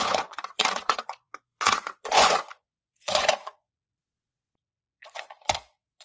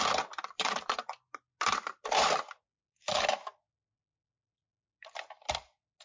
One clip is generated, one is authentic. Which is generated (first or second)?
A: first